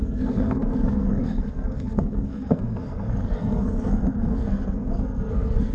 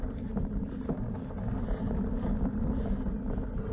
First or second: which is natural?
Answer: second